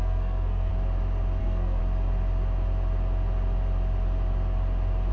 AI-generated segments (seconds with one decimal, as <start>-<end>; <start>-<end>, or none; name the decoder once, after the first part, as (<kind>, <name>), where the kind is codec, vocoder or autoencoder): 0.0-0.7 (codec, SNAC); 1.4-1.8